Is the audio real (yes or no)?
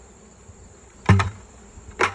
no